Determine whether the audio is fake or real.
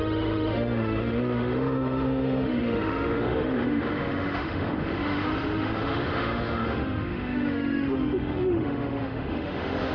fake